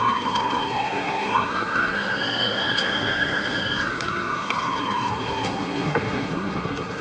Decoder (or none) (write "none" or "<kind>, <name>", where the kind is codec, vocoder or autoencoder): codec, SNAC